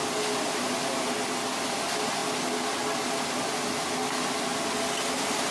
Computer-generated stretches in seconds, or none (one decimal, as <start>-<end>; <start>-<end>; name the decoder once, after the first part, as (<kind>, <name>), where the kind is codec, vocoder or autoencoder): none